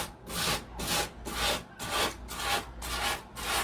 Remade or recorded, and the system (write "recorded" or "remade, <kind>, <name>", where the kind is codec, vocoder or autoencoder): recorded